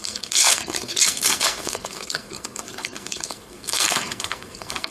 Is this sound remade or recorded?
remade